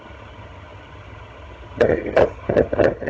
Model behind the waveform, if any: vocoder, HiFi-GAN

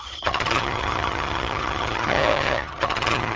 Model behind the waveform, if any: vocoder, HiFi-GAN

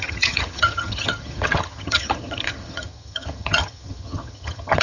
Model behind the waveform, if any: vocoder, HiFi-GAN